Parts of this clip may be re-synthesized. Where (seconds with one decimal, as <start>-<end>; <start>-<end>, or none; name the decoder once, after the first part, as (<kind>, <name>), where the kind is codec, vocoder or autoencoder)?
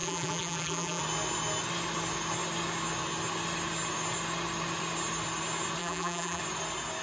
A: 0.0-1.0 (vocoder, BigVGAN v2); 5.8-6.4